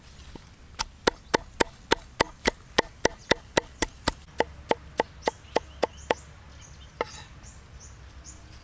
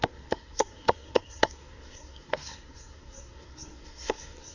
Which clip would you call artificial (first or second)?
second